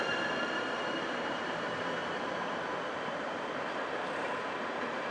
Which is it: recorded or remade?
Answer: remade